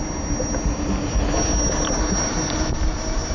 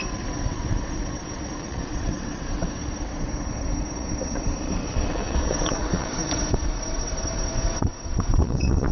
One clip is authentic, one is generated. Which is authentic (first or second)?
first